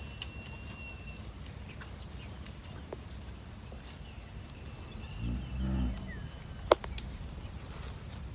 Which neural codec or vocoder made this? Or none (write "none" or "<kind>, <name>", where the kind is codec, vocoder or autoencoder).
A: none